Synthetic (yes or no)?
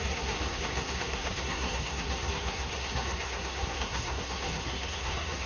yes